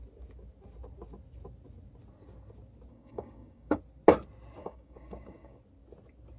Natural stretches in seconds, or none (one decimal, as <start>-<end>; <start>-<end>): 0.0-2.9; 3.8-4.6; 5.6-6.4

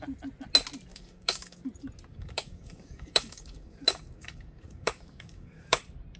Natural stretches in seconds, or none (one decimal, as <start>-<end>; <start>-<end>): 0.0-0.9; 1.6-2.1; 5.8-6.2

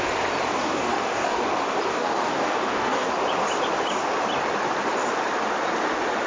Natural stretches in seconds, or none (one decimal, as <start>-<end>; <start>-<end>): 0.0-0.5; 1.4-1.9; 3.1-6.3

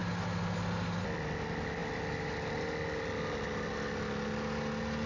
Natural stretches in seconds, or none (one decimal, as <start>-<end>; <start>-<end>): 0.0-5.1

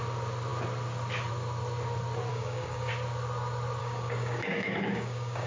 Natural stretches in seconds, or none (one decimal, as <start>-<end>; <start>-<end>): 0.0-2.3; 2.9-3.8

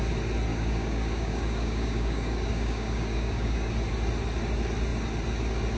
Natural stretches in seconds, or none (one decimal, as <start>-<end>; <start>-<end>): 0.0-0.5; 3.7-5.8

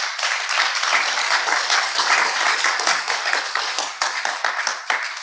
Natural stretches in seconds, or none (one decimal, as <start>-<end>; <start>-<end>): 0.0-1.2; 4.3-5.2